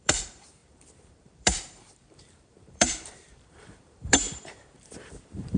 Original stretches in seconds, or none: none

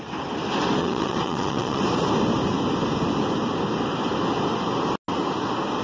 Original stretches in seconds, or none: 0.0-0.8; 1.8-5.8

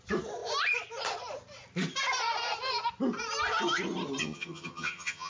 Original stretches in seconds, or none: 0.0-4.2

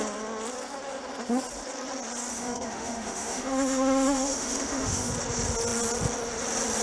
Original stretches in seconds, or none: 0.0-2.3; 5.1-6.8

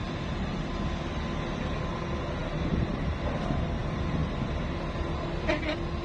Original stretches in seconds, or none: 0.0-2.4; 3.8-6.0

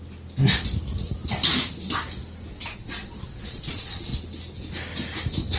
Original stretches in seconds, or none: 0.0-2.5; 4.1-5.6

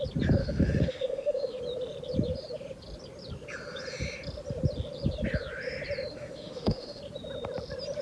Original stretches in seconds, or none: 0.0-0.4; 1.6-6.1; 7.0-8.0